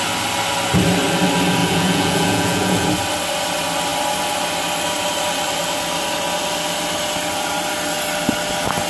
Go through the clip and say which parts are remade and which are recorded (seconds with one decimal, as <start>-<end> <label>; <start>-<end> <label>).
0.0-1.6 recorded; 1.6-2.9 remade; 2.9-8.9 recorded